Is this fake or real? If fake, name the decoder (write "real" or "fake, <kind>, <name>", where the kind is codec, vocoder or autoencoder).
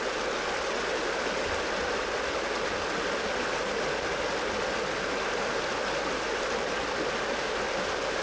real